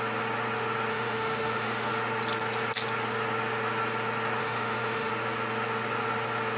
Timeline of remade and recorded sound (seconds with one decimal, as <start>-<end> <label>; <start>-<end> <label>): 0.0-0.9 recorded; 0.9-1.9 remade; 1.9-4.4 recorded; 4.4-5.1 remade; 5.1-6.6 recorded

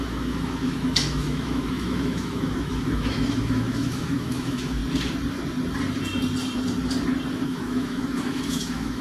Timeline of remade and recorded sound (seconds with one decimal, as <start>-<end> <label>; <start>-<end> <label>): 0.0-4.8 remade; 4.8-7.3 recorded; 7.3-9.0 remade